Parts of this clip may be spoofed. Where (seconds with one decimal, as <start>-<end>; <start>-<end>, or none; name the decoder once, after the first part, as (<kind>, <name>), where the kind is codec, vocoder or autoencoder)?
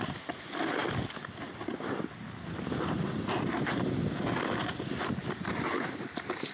none